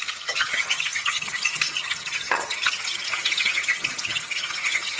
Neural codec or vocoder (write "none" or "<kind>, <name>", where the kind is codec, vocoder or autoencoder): vocoder, HiFi-GAN